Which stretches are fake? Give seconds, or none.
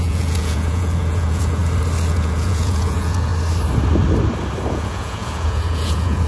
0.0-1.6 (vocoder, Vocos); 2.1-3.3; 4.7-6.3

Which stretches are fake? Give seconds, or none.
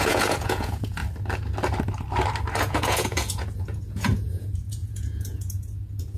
0.0-1.0 (vocoder, Vocos); 2.6-6.2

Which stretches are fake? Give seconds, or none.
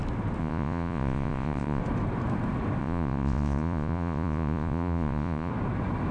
0.4-1.8 (vocoder, Vocos); 2.8-5.5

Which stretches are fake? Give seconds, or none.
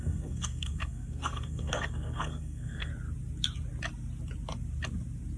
0.0-2.9 (codec, SNAC)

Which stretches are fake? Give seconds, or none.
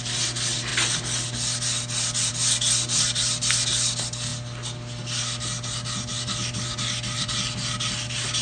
none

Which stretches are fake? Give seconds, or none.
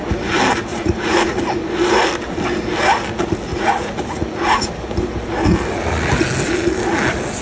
0.7-1.4 (vocoder, Vocos); 3.5-4.7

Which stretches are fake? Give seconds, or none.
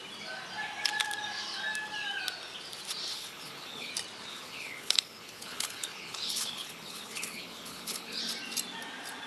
3.1-3.9 (codec, HILCodec); 4.3-8.2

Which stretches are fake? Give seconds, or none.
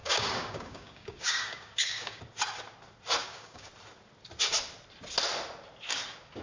0.0-2.2 (codec, DAC); 3.2-3.7